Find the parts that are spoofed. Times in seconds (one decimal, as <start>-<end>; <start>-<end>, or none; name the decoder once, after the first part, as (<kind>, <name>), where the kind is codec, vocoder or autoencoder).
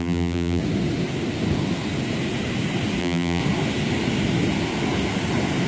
0.0-0.6 (vocoder, BigVGAN v2); 3.0-3.4